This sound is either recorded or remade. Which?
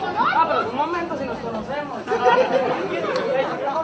recorded